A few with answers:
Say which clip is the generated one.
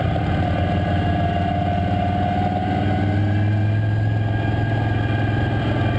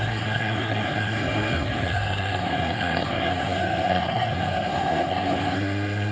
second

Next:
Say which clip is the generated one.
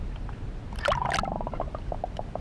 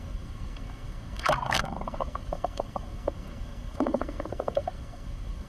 second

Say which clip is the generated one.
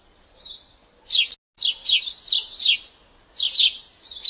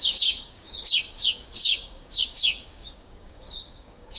second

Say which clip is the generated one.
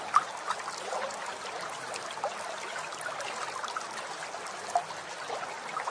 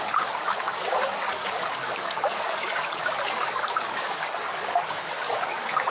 second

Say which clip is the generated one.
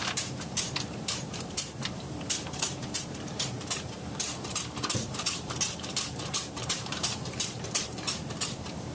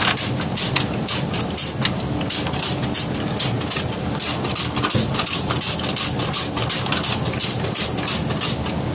first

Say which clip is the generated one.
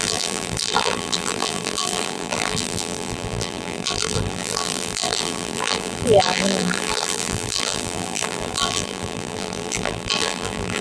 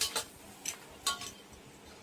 first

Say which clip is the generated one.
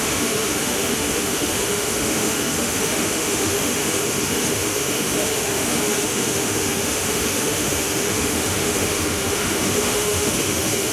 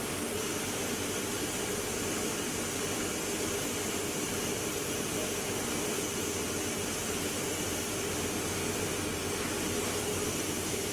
first